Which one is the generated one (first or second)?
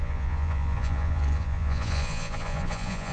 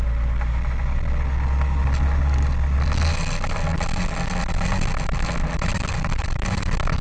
first